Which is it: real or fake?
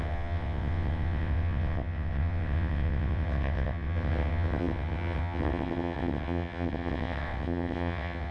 fake